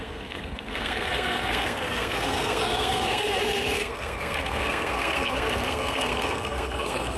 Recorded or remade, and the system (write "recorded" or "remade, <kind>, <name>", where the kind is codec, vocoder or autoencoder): remade, codec, SNAC